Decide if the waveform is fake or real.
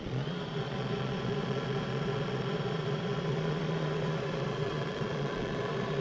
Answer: fake